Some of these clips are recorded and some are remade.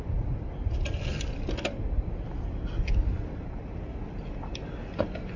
recorded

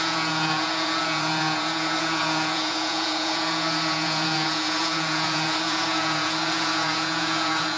remade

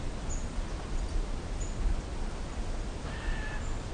recorded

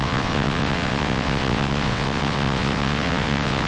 remade